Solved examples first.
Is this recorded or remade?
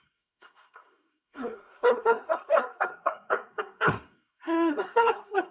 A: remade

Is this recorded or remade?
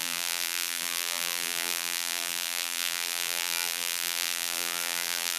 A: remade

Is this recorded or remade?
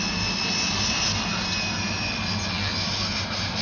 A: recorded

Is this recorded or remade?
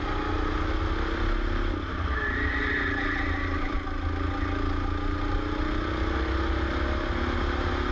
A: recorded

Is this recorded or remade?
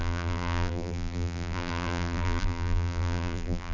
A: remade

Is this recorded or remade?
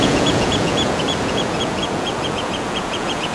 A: remade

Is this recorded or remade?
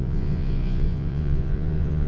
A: remade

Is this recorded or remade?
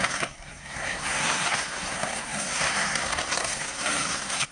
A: remade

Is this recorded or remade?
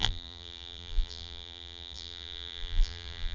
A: remade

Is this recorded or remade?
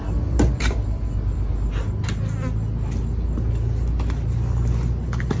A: recorded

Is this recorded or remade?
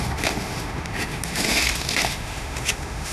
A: remade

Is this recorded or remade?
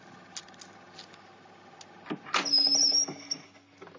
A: recorded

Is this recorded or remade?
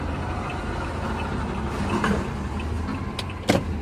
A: recorded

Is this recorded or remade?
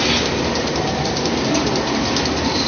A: recorded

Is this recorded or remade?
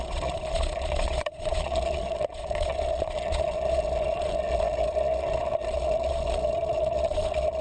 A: remade